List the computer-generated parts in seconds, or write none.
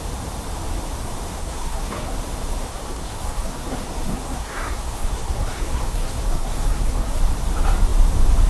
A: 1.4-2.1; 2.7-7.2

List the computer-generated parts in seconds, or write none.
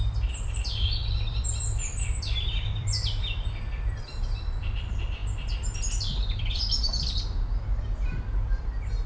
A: 0.0-7.7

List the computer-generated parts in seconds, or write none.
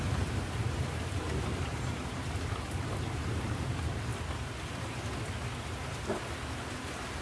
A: 0.0-4.1; 6.4-7.2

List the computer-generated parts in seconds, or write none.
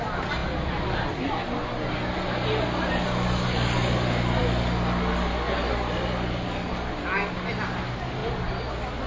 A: none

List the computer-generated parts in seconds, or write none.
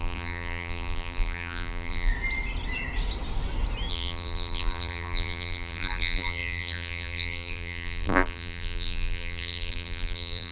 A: 0.0-2.1; 3.9-10.5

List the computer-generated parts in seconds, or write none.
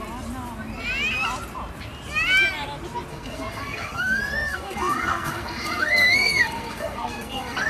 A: 3.1-7.7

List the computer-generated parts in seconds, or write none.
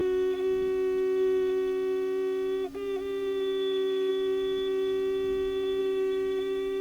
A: 5.8-6.8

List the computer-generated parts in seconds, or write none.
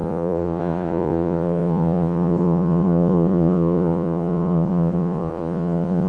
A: 0.0-6.1